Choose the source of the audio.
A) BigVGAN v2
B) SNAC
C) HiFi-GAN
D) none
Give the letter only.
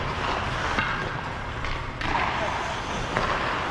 D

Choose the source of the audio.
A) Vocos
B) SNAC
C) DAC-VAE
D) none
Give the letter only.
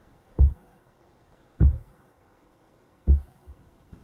B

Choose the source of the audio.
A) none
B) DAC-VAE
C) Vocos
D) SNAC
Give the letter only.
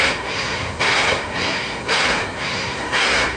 D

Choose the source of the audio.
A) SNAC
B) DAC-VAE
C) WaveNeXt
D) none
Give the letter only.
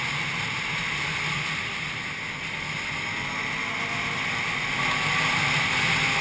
D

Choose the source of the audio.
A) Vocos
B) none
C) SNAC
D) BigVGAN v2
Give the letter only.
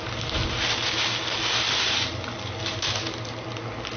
B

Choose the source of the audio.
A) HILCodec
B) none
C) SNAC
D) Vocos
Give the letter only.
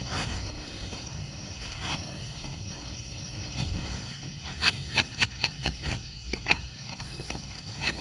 C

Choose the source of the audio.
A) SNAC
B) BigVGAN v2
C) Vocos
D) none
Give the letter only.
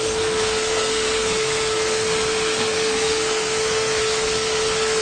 A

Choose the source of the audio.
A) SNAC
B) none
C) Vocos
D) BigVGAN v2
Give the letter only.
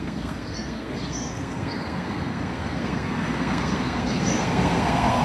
A